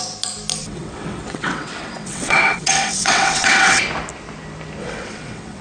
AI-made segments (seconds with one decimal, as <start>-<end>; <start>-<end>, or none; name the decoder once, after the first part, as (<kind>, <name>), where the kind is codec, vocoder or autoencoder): 0.6-3.8 (vocoder, WaveNeXt); 4.8-5.6